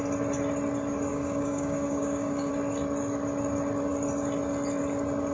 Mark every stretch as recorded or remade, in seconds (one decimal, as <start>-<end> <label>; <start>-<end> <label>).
0.0-1.1 recorded; 1.1-2.5 remade; 2.5-5.3 recorded